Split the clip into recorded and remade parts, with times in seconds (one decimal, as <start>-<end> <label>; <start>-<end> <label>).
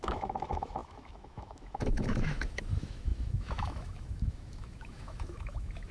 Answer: 0.0-5.9 remade